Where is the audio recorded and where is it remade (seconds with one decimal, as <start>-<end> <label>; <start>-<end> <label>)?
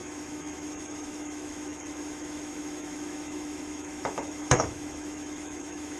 0.0-6.0 remade